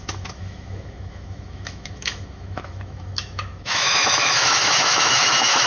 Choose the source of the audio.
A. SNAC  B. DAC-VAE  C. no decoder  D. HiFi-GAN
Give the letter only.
B